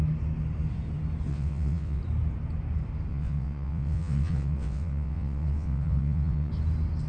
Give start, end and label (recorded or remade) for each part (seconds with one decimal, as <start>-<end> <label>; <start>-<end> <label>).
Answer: 0.0-1.3 recorded; 1.3-2.0 remade; 2.0-3.1 recorded; 3.1-6.5 remade; 6.5-7.1 recorded